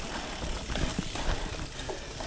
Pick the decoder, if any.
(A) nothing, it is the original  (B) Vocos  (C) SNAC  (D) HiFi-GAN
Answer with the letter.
A